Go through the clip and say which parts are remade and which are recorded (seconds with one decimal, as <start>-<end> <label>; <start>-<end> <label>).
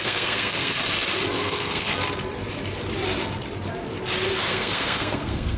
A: 0.0-0.8 remade; 0.8-1.3 recorded; 1.3-1.9 remade; 1.9-4.5 recorded; 4.5-5.6 remade